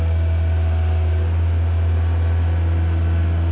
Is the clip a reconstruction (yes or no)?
no